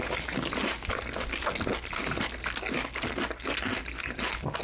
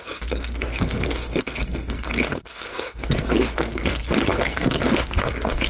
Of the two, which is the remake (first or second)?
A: second